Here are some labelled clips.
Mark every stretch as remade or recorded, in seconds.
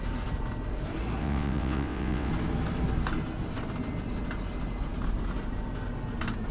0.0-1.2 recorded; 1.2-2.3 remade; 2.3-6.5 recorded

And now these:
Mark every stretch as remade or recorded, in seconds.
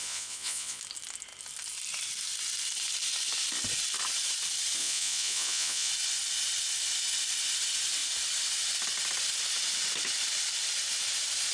0.0-0.8 remade; 0.8-4.8 recorded; 4.8-5.9 remade; 5.9-11.5 recorded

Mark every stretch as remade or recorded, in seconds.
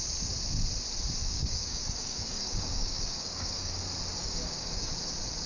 0.0-1.2 recorded; 1.2-3.8 remade; 3.8-4.2 recorded; 4.2-4.9 remade; 4.9-5.5 recorded